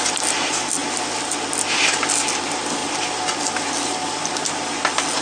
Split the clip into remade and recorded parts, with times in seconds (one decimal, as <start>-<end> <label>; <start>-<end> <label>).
0.0-5.2 recorded